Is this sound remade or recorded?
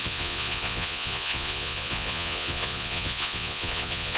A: remade